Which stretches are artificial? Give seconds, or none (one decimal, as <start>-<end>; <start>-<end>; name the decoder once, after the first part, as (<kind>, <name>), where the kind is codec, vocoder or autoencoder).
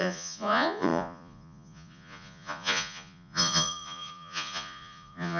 0.0-5.4 (vocoder, Vocos)